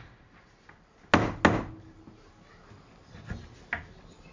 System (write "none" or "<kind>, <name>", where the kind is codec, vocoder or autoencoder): none